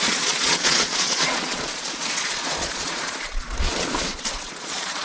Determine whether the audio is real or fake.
fake